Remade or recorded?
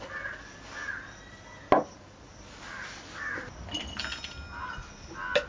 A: recorded